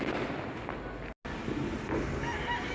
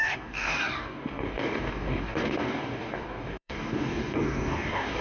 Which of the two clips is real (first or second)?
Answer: first